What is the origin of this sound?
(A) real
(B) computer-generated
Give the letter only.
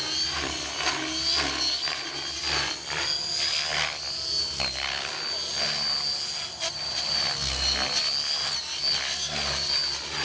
A